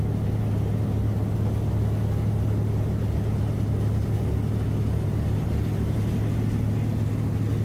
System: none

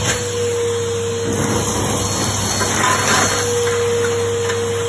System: none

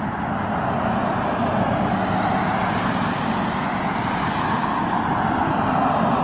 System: none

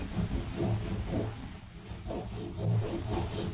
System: none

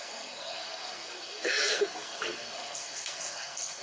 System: codec, SNAC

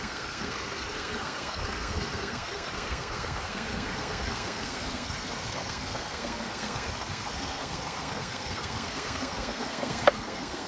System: codec, SNAC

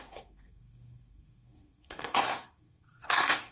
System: codec, SNAC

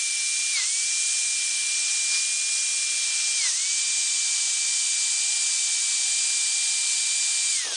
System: none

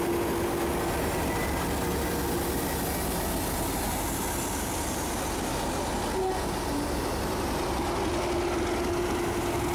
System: none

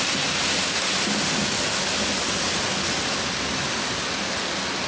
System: none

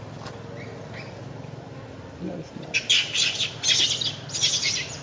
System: none